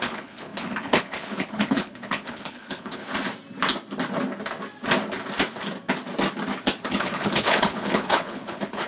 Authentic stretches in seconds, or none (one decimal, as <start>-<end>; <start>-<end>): 3.0-6.9

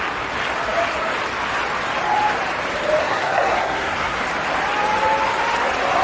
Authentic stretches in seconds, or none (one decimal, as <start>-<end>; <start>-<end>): 0.0-3.0; 4.2-6.0

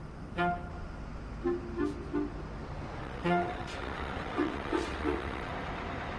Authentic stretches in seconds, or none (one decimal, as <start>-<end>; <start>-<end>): 0.0-3.0; 5.5-6.2

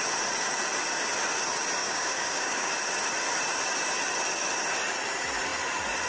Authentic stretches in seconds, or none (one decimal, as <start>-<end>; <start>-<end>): 0.0-1.8; 2.7-6.1

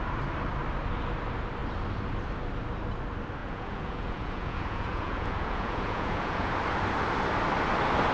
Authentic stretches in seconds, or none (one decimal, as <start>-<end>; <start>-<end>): 0.0-3.4; 6.5-8.1